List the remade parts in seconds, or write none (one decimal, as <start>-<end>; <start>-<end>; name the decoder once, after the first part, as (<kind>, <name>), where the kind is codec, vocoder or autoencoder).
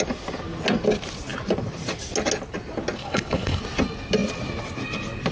3.0-3.6 (codec, HILCodec)